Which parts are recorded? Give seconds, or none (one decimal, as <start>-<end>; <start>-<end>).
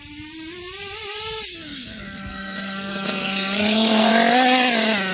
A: 0.0-1.5; 4.1-5.1